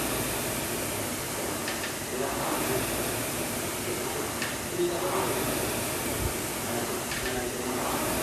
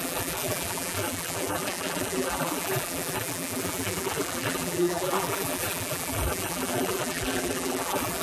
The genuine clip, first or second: first